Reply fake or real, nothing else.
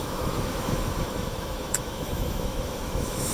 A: fake